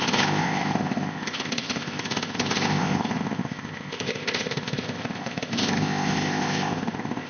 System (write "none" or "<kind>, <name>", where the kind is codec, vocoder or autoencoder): codec, ZipCodec